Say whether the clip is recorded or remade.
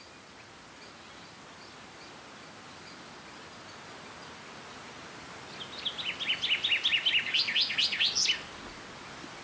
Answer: recorded